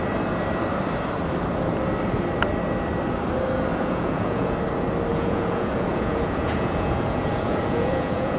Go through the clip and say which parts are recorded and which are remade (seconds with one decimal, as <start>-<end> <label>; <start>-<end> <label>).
0.0-3.7 recorded; 3.7-4.5 remade; 4.5-5.1 recorded; 5.1-8.4 remade

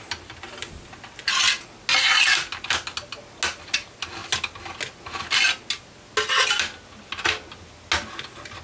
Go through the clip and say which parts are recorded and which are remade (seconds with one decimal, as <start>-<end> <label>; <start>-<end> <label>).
0.0-8.6 recorded

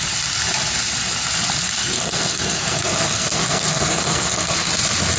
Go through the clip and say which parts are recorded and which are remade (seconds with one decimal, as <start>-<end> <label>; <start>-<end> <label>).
0.0-1.8 recorded; 1.8-4.7 remade; 4.7-5.2 recorded

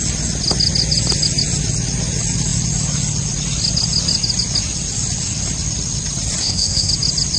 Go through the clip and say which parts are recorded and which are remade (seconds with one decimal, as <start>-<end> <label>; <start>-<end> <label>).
0.0-6.4 recorded; 6.4-6.9 remade; 6.9-7.4 recorded

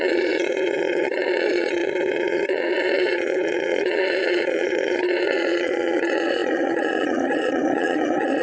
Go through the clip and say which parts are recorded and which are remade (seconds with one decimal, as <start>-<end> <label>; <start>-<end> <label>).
0.0-8.4 remade

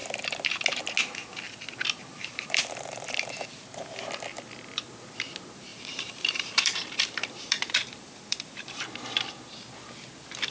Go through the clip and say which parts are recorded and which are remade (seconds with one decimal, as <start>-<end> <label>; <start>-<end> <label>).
0.0-2.1 recorded; 2.1-3.3 remade; 3.3-5.7 recorded; 5.7-8.8 remade; 8.8-10.5 recorded

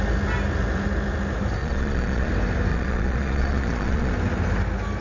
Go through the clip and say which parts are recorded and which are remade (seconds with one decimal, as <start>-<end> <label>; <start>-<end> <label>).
0.0-1.6 recorded; 1.6-2.3 remade; 2.3-2.7 recorded; 2.7-4.1 remade; 4.1-5.0 recorded